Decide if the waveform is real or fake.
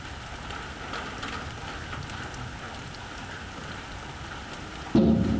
real